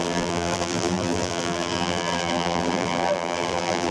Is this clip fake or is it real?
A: fake